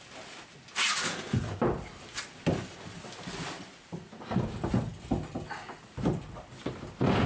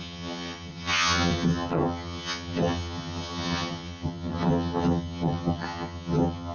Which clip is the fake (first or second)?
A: second